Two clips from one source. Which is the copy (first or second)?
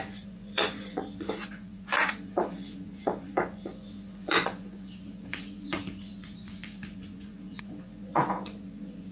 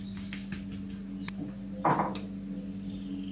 first